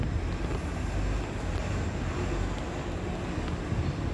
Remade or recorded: recorded